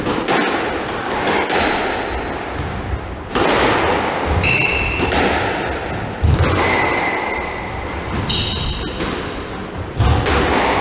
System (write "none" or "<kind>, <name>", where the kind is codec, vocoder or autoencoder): none